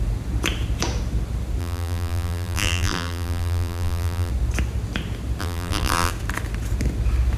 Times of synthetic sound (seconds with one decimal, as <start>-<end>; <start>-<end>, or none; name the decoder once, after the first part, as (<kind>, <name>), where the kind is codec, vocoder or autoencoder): 1.6-4.3 (vocoder, BigVGAN v2); 5.4-6.1